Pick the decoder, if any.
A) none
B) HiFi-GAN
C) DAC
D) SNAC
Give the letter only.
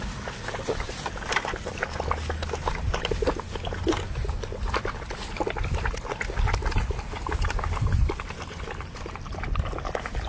A